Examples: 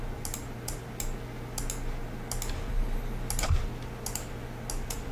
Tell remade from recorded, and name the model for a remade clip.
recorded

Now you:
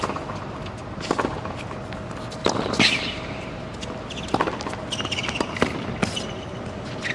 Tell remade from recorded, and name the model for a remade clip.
recorded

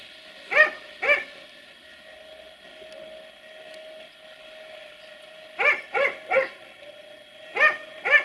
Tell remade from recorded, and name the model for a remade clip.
recorded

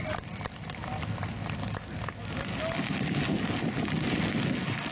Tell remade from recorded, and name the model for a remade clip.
recorded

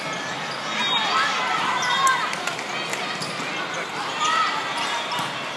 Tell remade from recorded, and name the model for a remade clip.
recorded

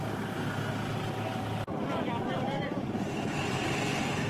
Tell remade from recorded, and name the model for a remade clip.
recorded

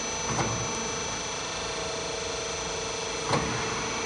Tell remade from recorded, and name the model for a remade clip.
recorded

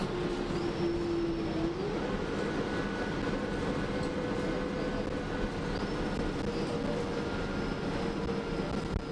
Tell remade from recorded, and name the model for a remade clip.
recorded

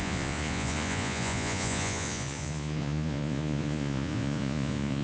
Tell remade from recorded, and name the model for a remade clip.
remade, vocoder, Vocos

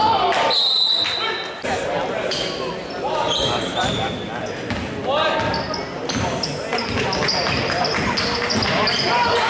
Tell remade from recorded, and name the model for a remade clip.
recorded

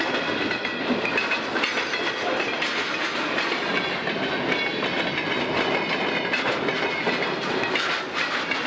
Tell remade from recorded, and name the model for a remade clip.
recorded